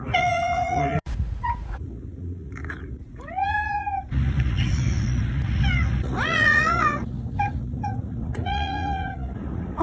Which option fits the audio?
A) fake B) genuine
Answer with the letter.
A